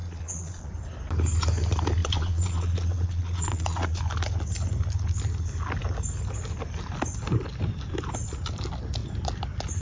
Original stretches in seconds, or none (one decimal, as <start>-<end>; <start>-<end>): 0.7-2.0; 4.0-9.8